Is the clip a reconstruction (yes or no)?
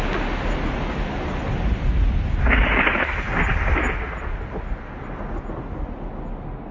no